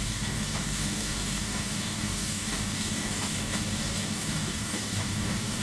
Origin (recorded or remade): remade